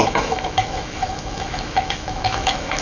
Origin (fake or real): fake